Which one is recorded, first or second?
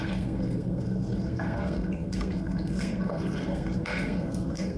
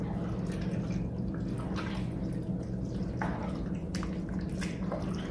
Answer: second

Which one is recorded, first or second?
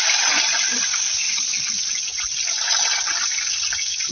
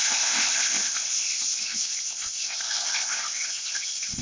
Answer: first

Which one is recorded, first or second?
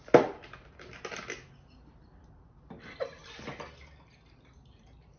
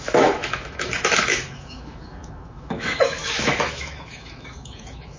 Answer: first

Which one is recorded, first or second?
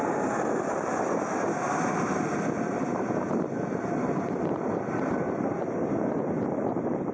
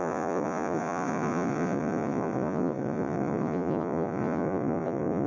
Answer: first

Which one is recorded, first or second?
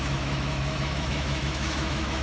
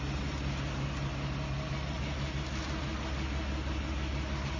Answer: second